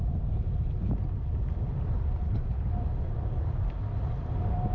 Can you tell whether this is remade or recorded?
recorded